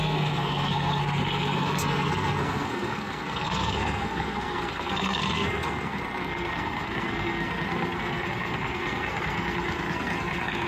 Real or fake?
fake